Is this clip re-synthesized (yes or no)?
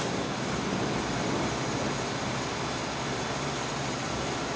yes